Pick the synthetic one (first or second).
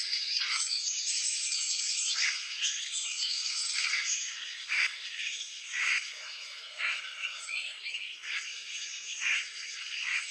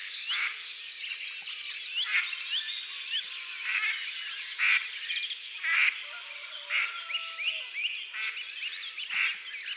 first